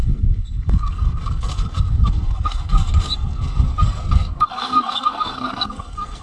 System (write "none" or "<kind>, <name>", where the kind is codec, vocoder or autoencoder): codec, SNAC